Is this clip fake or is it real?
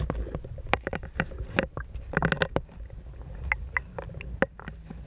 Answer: real